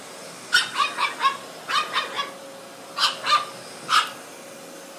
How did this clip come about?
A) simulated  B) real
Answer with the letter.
B